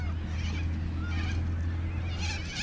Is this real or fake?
real